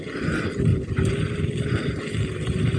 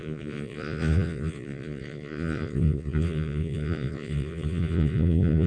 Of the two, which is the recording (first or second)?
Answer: first